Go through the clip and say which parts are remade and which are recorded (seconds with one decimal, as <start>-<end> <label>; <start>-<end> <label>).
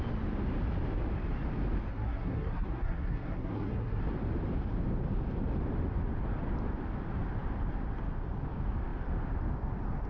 0.0-1.9 recorded; 1.9-4.0 remade; 4.0-10.1 recorded